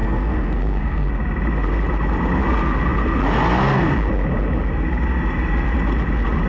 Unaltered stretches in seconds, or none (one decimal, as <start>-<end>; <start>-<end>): 1.1-6.5

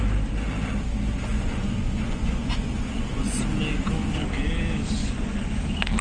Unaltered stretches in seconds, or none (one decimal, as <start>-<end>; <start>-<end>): 0.0-1.3; 3.4-5.0; 5.6-6.0

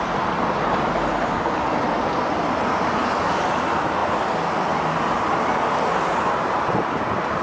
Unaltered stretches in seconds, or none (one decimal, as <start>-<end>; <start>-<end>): 0.0-7.4

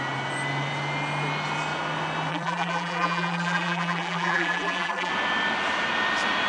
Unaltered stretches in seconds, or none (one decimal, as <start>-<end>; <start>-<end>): 0.0-2.3; 5.1-6.5

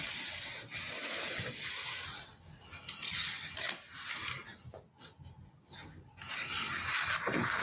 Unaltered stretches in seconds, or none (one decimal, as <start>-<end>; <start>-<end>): 0.0-7.6

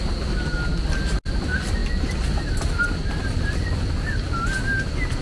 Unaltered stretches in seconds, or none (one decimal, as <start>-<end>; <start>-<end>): 0.0-5.2